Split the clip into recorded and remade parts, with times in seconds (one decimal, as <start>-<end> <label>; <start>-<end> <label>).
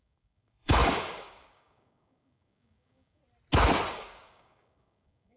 0.0-3.2 remade; 3.2-3.9 recorded; 3.9-5.4 remade